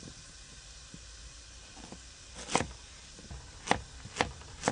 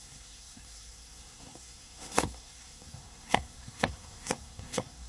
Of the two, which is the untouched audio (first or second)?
first